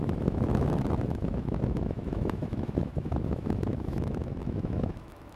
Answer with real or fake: fake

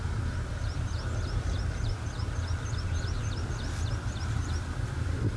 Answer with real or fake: real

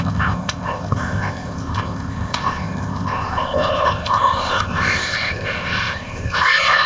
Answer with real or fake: fake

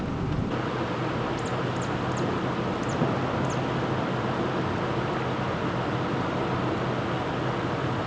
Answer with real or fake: real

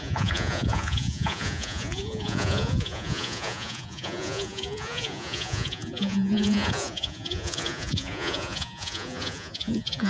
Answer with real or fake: fake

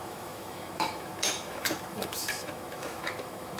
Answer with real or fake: fake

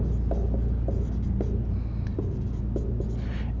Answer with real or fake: real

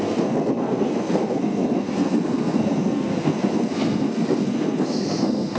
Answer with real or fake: fake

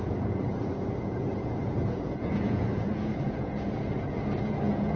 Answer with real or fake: fake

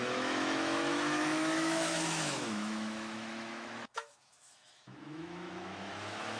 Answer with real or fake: fake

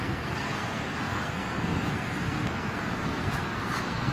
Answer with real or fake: fake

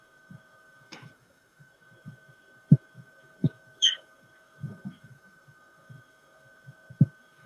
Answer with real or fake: fake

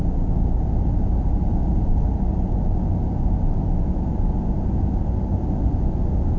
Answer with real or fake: real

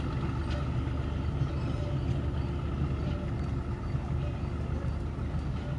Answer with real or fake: real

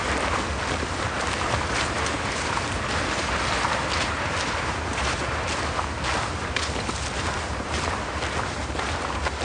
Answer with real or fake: real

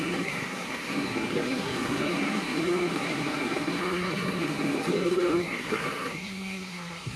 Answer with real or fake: fake